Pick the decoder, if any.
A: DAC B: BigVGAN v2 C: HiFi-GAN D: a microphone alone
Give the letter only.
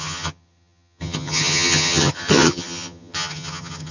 C